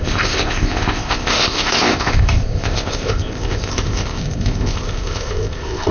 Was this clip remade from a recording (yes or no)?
yes